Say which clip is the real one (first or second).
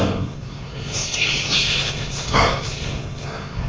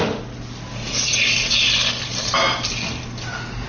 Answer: second